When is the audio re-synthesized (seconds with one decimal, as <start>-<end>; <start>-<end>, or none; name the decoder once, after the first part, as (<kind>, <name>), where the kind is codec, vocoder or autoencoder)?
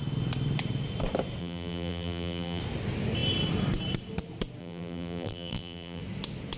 1.4-2.6 (vocoder, BigVGAN v2); 4.6-6.0